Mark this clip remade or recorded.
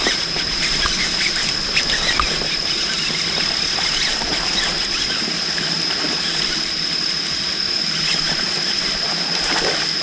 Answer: recorded